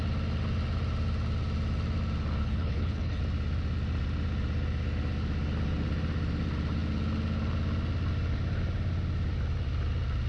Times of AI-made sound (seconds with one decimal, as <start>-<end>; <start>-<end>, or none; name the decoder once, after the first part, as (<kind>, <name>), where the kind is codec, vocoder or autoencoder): 2.4-3.2 (codec, HILCodec)